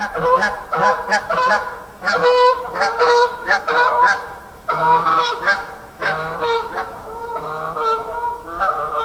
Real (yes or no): no